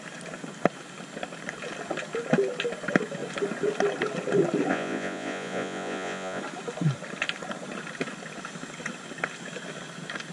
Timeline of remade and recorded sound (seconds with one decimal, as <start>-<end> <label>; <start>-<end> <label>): 0.0-4.7 recorded; 4.7-6.4 remade; 6.4-10.3 recorded